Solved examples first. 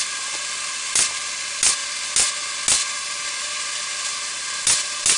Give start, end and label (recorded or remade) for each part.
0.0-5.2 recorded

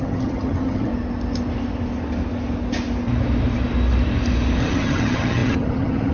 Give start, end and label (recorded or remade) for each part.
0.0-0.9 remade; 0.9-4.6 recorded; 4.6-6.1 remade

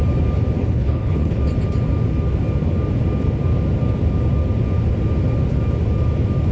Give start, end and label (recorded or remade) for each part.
0.0-0.6 recorded; 0.6-1.4 remade; 1.4-6.5 recorded